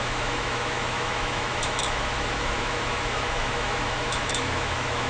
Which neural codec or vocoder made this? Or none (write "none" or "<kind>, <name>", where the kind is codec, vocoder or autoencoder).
autoencoder, DAC-VAE